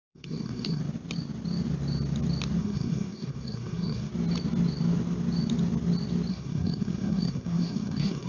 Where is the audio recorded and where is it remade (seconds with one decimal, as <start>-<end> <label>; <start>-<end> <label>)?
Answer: 0.0-0.8 remade; 0.8-2.6 recorded; 2.6-4.1 remade; 4.1-6.3 recorded; 6.3-8.3 remade